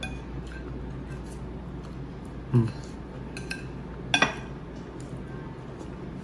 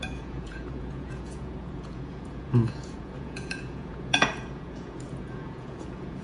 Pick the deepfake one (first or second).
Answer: second